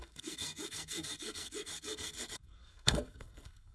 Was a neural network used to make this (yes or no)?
yes